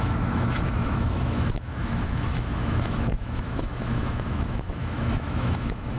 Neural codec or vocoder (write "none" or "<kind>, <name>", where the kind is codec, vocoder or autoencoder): autoencoder, DAC-VAE